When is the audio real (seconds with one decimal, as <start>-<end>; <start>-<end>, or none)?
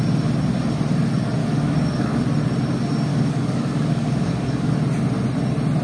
0.0-1.4; 2.2-3.1; 4.7-5.8